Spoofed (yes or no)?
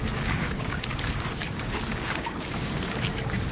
yes